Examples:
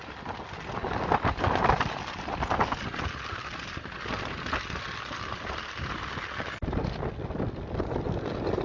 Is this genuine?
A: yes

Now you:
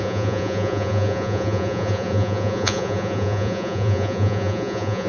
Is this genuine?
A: no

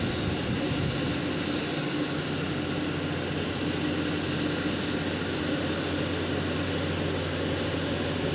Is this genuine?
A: yes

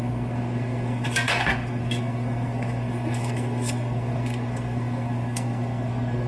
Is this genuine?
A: no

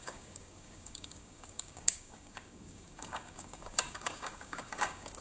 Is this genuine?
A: no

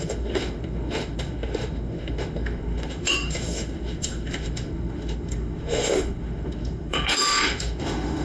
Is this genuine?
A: no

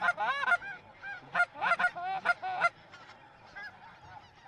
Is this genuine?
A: yes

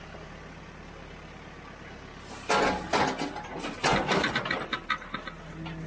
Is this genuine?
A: yes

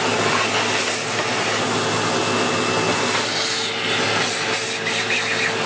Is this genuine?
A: yes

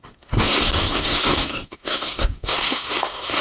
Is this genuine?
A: no